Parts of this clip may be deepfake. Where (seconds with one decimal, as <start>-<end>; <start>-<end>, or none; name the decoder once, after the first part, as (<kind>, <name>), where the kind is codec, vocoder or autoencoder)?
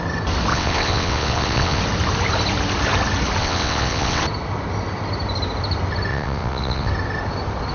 0.5-1.8 (vocoder, WaveNeXt); 3.4-4.2; 6.1-6.9